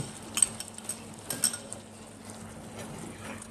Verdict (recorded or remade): recorded